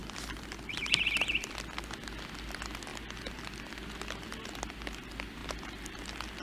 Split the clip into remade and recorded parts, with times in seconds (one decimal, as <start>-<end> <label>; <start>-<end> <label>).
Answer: 0.0-6.4 recorded